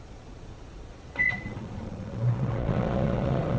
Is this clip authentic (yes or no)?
no